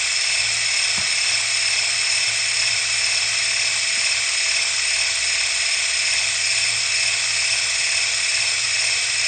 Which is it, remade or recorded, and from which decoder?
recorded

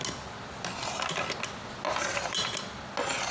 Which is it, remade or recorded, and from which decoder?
recorded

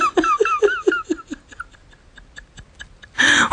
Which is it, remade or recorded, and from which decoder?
recorded